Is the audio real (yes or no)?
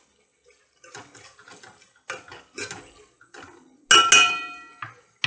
yes